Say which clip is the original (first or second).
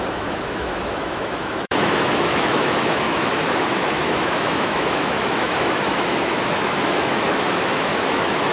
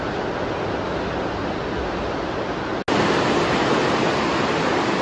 second